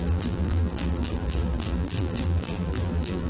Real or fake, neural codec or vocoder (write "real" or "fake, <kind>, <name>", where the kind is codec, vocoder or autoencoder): fake, vocoder, BigVGAN v2